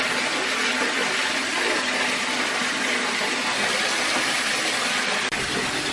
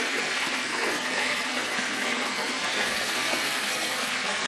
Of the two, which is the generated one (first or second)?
second